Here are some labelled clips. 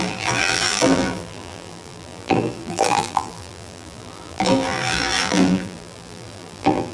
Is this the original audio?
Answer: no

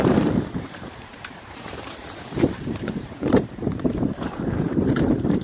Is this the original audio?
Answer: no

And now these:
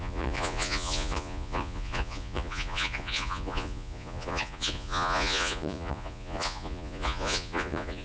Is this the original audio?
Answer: no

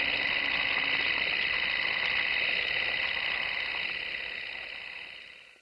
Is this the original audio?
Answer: yes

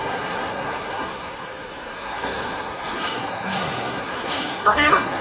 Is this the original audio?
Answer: no